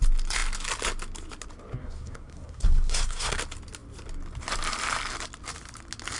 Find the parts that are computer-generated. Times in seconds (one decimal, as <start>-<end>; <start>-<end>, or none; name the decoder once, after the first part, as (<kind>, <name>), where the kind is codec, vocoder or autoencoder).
1.8-3.4 (codec, SNAC)